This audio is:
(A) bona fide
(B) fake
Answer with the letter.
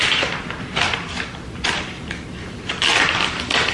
B